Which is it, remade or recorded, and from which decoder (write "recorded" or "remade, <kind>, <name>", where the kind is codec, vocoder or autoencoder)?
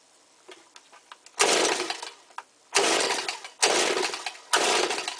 recorded